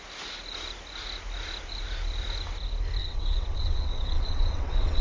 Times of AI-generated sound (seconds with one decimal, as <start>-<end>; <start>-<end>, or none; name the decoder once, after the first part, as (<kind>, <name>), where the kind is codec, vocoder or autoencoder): 3.0-5.0 (vocoder, WaveNeXt)